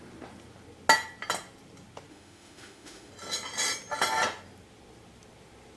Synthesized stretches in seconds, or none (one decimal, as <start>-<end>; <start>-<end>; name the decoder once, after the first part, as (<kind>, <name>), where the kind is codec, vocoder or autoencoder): 2.1-3.1 (autoencoder, DAC-VAE)